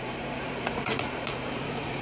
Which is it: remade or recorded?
remade